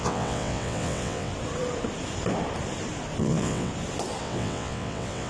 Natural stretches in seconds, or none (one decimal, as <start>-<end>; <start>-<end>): 1.3-3.2; 3.7-4.2